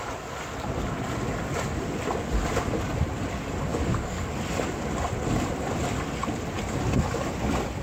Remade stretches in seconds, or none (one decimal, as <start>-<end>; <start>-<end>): 3.7-4.3